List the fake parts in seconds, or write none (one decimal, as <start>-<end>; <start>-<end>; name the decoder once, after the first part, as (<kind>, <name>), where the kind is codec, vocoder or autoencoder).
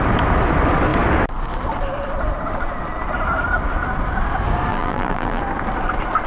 4.7-5.4 (vocoder, BigVGAN v2)